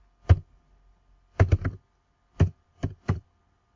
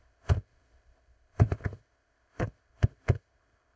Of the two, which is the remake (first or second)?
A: second